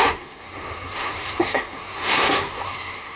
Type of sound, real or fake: fake